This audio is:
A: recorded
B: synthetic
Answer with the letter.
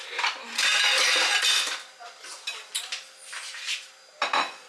A